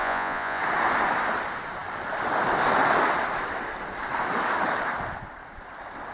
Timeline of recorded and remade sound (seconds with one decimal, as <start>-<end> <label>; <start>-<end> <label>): 0.0-0.6 remade; 0.6-6.1 recorded